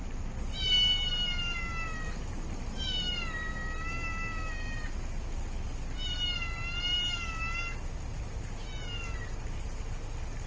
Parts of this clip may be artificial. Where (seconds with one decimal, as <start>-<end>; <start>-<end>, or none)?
none